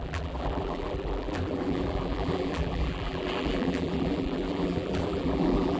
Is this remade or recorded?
remade